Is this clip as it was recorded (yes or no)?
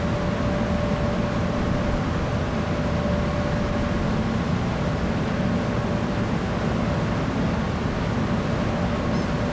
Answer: yes